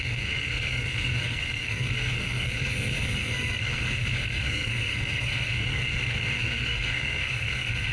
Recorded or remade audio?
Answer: remade